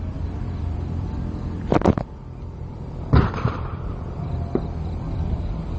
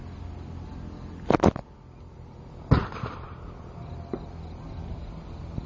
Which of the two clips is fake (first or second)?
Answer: first